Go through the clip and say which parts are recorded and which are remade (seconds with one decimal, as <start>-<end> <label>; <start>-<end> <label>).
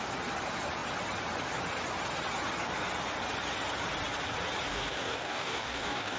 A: 0.0-4.7 recorded; 4.7-6.2 remade